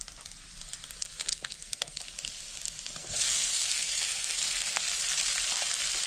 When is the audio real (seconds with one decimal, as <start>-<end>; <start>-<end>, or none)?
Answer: 0.0-1.3; 2.0-3.0; 4.8-6.1